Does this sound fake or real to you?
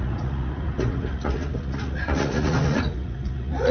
fake